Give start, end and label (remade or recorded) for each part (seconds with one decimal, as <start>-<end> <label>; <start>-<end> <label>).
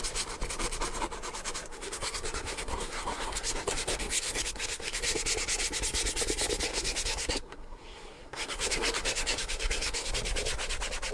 0.0-1.7 recorded; 1.7-5.2 remade; 5.2-6.7 recorded; 6.7-10.1 remade; 10.1-11.1 recorded